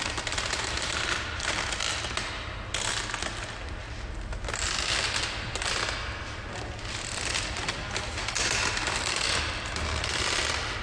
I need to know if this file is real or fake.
real